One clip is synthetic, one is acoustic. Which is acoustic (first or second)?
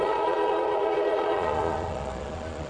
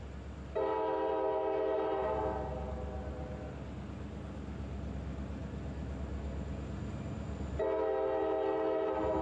second